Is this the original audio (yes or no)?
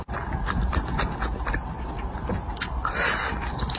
yes